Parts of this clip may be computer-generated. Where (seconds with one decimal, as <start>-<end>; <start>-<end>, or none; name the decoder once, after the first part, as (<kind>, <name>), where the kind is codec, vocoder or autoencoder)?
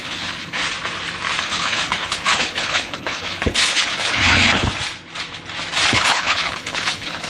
0.0-0.6 (codec, HILCodec); 1.4-4.7; 5.9-7.3